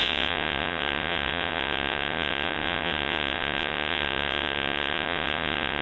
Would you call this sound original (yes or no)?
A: no